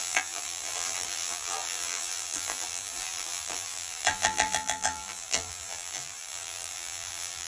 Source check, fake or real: fake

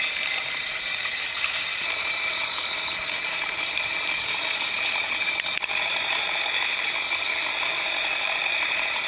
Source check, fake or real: fake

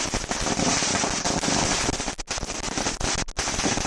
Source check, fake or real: real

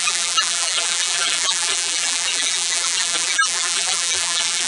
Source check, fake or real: fake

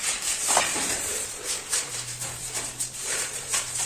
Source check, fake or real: fake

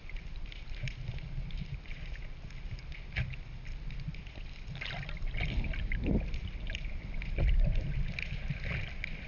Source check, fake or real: real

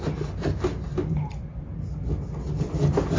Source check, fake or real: real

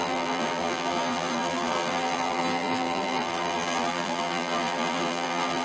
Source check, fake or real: fake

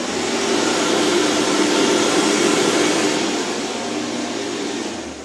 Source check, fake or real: real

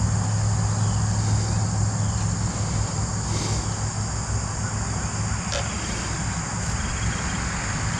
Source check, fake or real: real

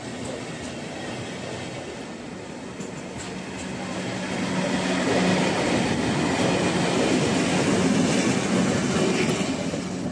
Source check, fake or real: real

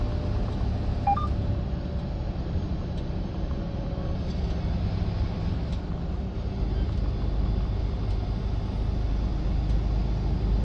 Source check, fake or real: real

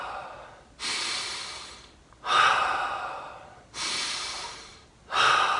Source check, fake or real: real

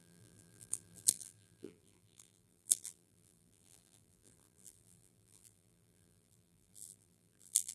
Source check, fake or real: fake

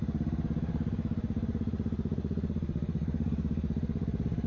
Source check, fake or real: fake